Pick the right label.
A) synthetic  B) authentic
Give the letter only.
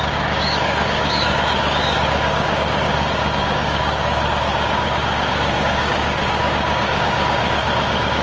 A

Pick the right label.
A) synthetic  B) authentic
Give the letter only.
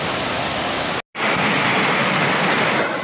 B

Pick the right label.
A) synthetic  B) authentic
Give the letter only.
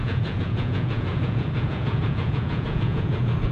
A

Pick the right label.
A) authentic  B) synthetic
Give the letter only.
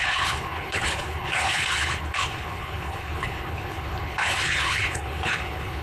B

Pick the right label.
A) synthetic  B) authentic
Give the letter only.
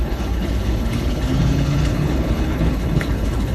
A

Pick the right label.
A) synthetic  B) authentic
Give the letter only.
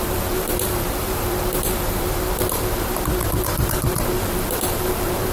A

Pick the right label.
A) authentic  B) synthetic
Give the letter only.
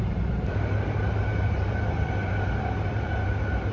B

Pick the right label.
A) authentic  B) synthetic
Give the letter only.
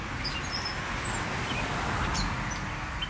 A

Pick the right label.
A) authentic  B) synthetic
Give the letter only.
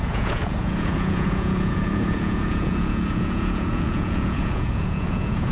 B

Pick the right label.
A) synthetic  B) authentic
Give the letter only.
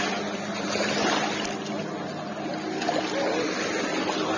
B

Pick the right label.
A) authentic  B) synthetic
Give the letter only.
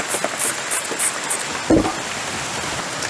A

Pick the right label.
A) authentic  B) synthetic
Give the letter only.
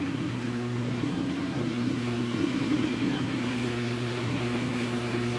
B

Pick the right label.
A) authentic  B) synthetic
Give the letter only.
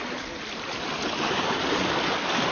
A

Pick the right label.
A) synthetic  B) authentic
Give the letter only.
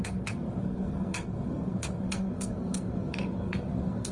A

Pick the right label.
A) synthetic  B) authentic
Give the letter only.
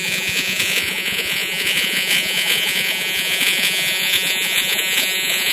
A